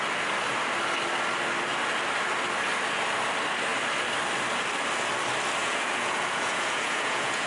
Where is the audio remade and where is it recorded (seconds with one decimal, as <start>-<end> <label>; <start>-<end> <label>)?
0.0-5.6 recorded; 5.6-7.5 remade